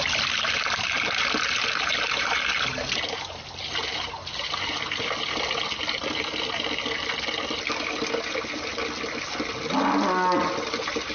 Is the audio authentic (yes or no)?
yes